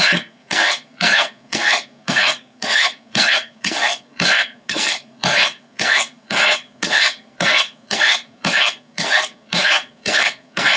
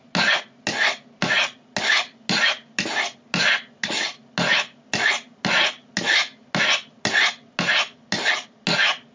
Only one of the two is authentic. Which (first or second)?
second